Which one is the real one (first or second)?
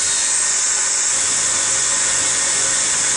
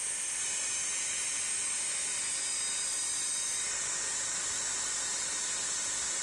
second